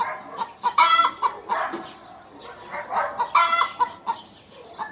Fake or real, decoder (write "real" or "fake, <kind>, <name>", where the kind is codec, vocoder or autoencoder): real